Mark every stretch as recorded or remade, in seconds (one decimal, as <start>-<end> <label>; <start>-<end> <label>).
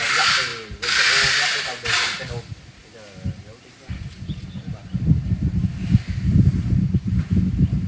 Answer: 0.0-7.9 recorded